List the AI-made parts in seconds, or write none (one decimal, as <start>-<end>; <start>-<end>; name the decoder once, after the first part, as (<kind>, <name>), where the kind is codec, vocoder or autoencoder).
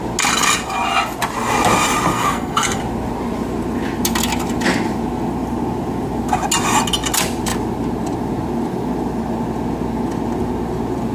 2.1-2.8 (codec, SNAC)